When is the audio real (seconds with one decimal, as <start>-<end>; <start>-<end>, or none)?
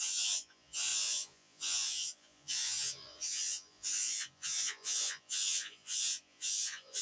none